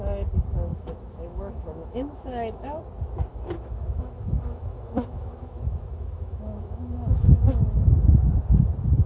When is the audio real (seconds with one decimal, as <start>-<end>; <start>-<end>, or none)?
0.0-0.7; 2.8-3.3; 7.9-9.1